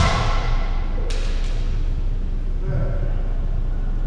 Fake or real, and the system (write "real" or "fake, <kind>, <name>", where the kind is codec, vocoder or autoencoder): real